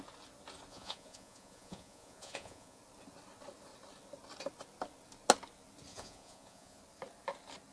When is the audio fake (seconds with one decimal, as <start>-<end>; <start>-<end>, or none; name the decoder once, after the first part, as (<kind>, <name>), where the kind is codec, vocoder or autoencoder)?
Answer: 0.7-2.8 (vocoder, Vocos); 5.9-6.8